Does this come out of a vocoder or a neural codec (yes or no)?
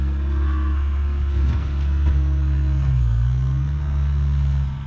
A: yes